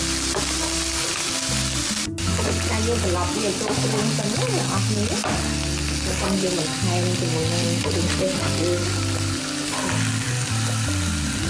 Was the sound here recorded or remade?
recorded